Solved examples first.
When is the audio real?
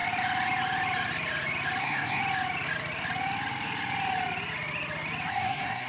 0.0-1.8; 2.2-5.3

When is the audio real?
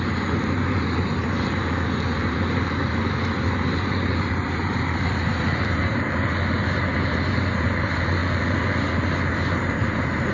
8.2-9.3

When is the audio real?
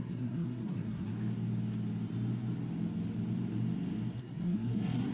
1.1-4.2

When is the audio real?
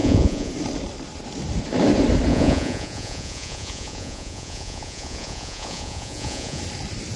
0.5-2.3; 6.6-7.2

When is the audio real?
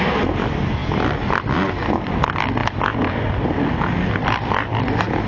0.0-5.3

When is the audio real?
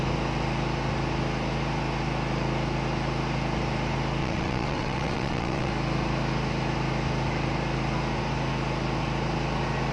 0.0-4.2; 5.7-9.9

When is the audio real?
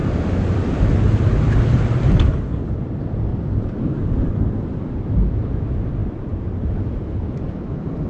2.3-3.3; 4.3-6.0; 7.5-8.1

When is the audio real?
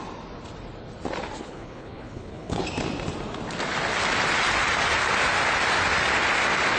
0.0-1.4; 2.6-6.8